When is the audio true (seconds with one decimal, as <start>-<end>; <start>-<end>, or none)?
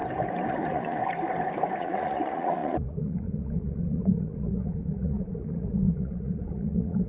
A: 0.0-0.5; 1.0-1.8